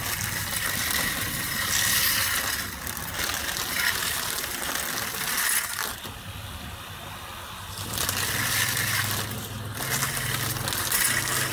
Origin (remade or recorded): recorded